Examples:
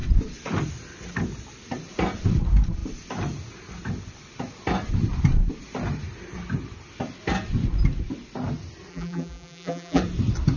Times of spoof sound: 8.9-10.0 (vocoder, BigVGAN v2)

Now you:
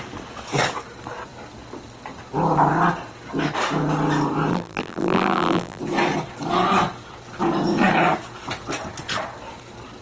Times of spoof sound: 4.5-5.8 (vocoder, BigVGAN v2)

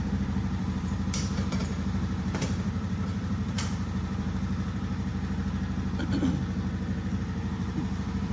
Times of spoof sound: 0.0-5.1 (vocoder, BigVGAN v2); 7.2-8.3

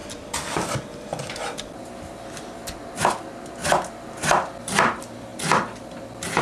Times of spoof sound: none